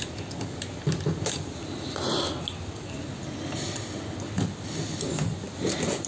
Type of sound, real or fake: real